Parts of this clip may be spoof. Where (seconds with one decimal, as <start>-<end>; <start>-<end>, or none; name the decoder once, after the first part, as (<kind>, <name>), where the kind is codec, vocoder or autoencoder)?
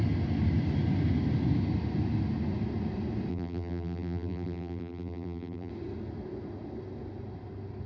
3.3-5.7 (vocoder, BigVGAN v2)